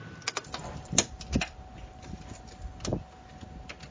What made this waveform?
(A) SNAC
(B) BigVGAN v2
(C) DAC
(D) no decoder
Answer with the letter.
D